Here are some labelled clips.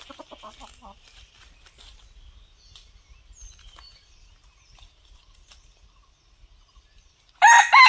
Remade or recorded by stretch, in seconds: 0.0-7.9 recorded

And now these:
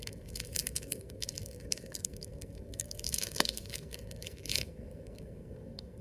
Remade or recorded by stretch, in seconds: 0.0-6.0 remade